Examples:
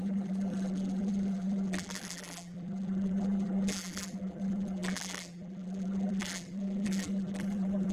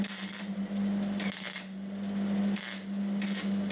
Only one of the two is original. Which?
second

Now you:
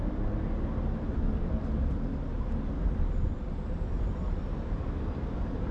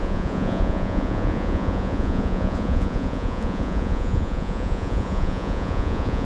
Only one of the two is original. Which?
first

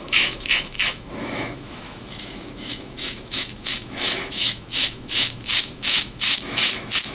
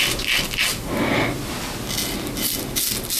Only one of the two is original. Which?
second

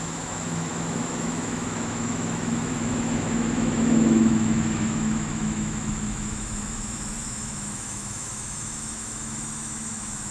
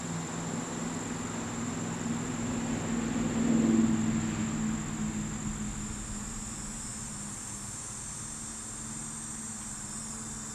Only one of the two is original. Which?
second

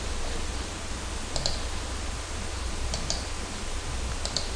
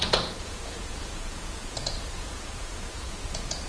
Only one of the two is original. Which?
first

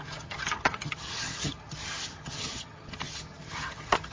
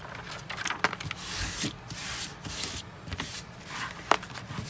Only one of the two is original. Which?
second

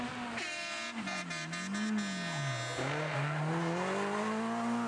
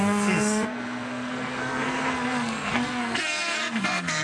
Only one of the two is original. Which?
first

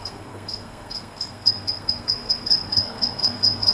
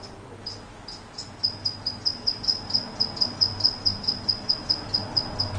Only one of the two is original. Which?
second